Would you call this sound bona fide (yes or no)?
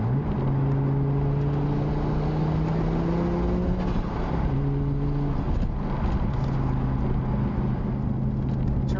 yes